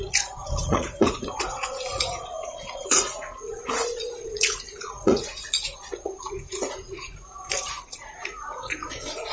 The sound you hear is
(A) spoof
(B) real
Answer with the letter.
A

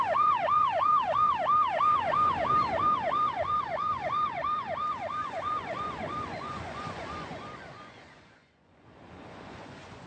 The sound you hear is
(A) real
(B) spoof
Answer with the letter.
B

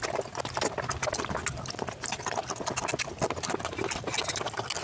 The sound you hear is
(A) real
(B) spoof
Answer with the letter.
A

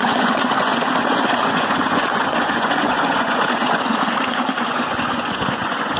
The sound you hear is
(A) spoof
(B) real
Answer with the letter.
A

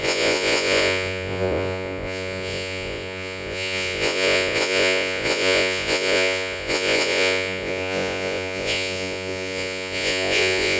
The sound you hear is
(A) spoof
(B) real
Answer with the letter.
A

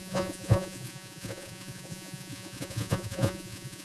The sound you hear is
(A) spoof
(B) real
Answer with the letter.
A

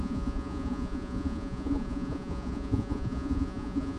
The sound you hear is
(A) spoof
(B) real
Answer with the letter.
A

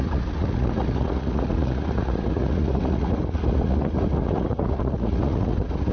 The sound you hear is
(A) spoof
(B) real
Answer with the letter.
A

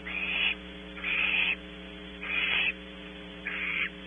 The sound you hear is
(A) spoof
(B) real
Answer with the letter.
A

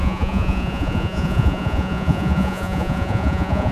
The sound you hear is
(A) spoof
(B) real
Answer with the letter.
A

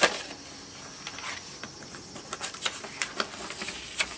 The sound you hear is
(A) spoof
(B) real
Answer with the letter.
B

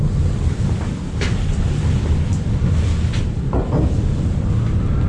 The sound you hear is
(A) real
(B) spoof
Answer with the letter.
A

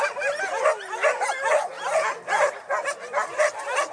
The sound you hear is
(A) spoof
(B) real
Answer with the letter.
B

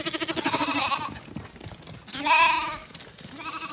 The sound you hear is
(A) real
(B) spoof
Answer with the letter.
A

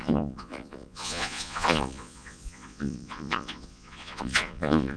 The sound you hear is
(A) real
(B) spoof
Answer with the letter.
B